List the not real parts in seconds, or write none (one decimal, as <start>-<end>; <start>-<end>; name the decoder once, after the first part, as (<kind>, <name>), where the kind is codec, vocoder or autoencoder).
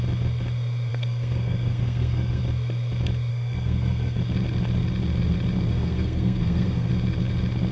0.9-2.4 (codec, SNAC); 3.3-4.2; 5.7-6.9